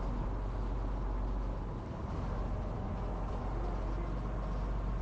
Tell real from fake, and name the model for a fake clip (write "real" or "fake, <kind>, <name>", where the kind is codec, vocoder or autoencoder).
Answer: real